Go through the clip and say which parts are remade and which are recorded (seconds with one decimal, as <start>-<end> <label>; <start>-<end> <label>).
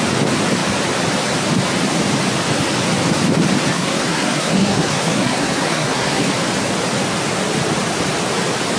0.0-3.7 recorded; 3.7-6.3 remade; 6.3-8.8 recorded